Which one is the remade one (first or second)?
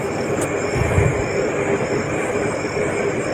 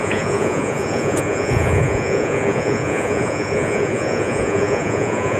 second